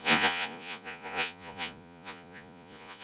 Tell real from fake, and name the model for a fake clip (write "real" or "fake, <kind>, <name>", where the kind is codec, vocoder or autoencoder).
fake, vocoder, Vocos